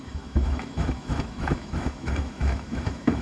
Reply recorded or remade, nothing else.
remade